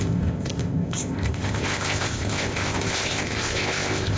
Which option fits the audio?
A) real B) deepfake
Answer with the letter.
B